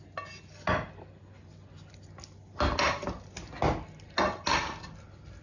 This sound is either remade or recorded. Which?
recorded